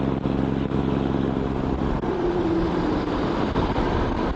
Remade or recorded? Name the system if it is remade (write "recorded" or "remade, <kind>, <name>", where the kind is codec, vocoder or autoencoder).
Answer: recorded